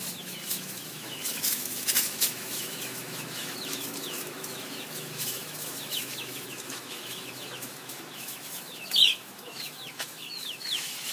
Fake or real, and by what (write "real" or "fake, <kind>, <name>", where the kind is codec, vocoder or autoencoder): fake, autoencoder, DAC-VAE